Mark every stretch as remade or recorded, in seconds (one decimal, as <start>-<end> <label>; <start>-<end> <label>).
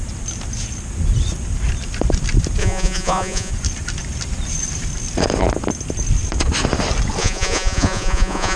0.0-2.6 recorded; 2.6-3.5 remade; 3.5-7.2 recorded; 7.2-8.6 remade